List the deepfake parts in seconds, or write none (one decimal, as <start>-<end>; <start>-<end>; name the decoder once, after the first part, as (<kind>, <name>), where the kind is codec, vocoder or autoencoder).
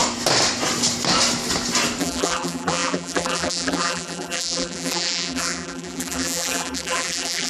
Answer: 2.0-7.5 (vocoder, BigVGAN v2)